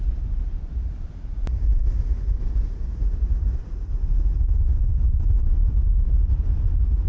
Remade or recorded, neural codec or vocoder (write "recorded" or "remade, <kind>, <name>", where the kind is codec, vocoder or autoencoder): recorded